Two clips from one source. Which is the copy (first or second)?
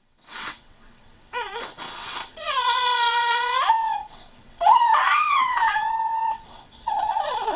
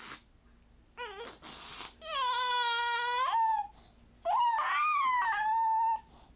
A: first